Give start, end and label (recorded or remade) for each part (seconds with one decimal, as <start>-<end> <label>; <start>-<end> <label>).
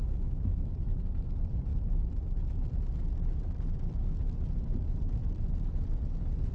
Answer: 0.0-6.5 recorded